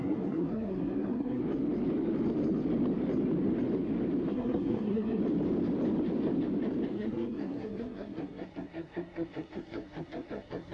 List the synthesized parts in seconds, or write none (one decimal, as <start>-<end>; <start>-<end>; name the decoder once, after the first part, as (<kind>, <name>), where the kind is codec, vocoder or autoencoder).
0.0-1.4 (codec, SNAC); 4.3-5.2; 6.9-10.7